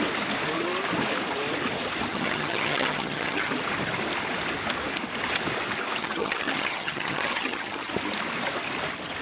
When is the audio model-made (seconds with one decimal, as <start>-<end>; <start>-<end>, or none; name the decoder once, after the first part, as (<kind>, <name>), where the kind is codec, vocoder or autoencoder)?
2.1-3.5 (vocoder, HiFi-GAN); 6.0-7.9